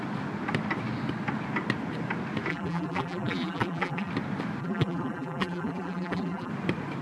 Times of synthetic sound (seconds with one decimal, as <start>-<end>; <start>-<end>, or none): 2.5-4.1; 4.6-6.5